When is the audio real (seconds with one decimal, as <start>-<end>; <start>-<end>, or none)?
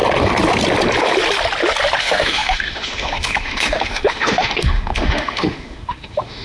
0.0-2.0